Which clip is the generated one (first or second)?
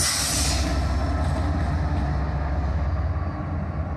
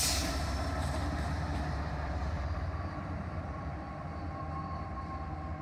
second